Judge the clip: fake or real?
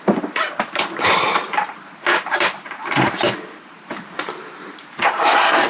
fake